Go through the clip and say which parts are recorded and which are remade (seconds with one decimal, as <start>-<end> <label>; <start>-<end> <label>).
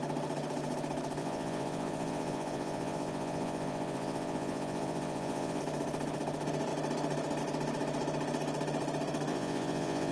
0.0-1.2 recorded; 1.2-5.6 remade; 5.6-9.3 recorded; 9.3-10.1 remade